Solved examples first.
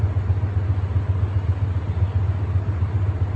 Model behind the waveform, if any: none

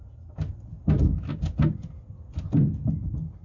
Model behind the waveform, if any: none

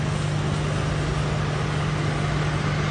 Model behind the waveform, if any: none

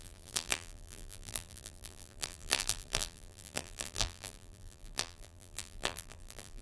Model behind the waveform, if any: vocoder, BigVGAN v2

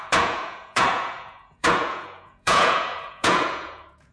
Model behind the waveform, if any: vocoder, Vocos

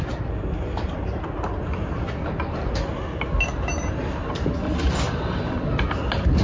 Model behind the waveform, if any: none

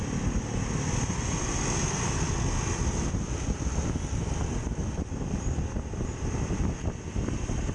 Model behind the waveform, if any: none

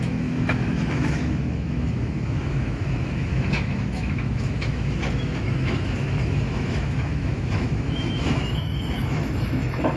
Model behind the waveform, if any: autoencoder, DAC-VAE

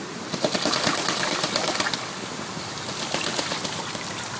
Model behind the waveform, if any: none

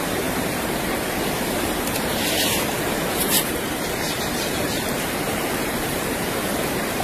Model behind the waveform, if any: vocoder, BigVGAN v2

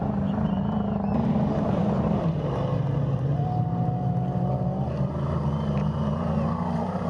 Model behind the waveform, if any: none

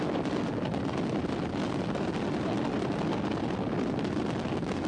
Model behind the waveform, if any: none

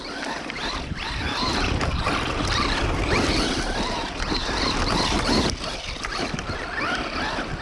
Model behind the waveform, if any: none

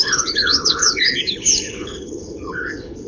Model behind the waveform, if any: codec, HILCodec